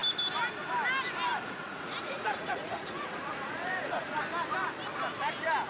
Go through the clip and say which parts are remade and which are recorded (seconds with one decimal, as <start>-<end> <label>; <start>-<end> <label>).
0.0-1.3 recorded; 1.3-4.2 remade; 4.2-5.7 recorded